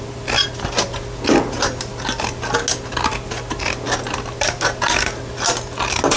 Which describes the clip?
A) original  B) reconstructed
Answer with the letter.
A